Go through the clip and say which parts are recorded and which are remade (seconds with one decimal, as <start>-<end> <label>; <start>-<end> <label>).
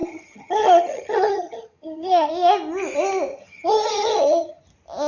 0.0-2.3 remade; 2.3-3.3 recorded; 3.3-4.6 remade; 4.6-5.1 recorded